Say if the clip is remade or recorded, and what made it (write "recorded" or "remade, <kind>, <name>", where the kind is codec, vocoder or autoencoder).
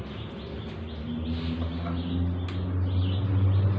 recorded